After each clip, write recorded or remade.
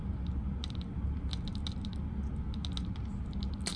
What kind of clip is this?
recorded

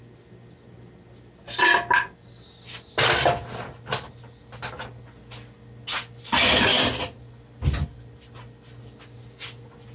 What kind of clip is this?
recorded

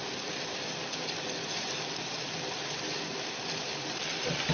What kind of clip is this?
remade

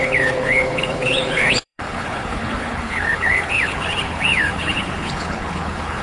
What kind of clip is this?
remade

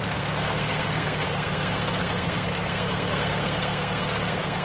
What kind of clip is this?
remade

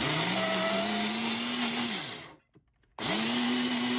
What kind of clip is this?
recorded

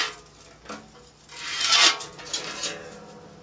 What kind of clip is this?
recorded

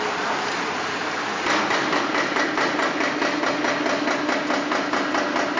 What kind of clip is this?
recorded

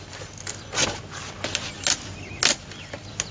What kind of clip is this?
recorded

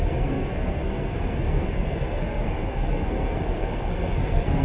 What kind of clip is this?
remade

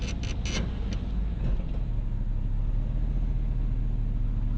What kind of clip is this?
recorded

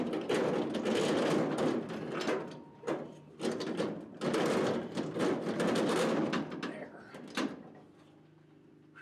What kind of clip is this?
recorded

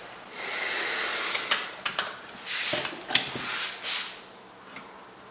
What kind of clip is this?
recorded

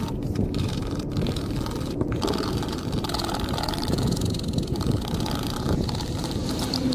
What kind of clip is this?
remade